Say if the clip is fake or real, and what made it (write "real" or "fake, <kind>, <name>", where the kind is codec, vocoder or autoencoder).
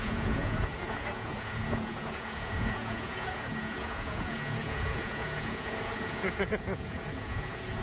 fake, vocoder, Vocos